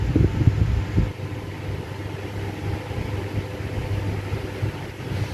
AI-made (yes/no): no